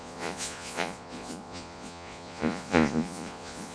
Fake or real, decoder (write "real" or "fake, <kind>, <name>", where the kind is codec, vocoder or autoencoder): fake, vocoder, Vocos